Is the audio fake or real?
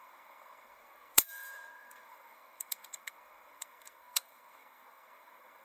fake